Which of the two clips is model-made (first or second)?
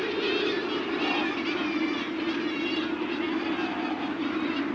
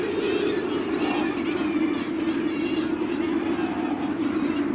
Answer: second